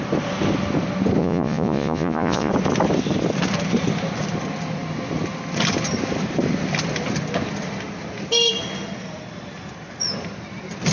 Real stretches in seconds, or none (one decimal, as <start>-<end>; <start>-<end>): 0.0-1.2; 2.5-10.9